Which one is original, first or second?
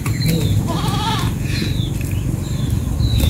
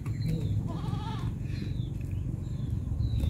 second